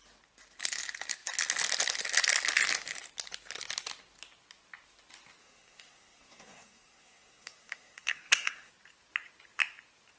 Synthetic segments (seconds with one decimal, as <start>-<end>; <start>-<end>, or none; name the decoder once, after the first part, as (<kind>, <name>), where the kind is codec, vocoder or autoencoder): 5.4-8.7 (codec, SNAC)